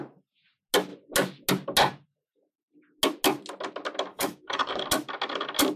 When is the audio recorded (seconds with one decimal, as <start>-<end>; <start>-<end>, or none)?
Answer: 0.0-4.1; 4.8-5.8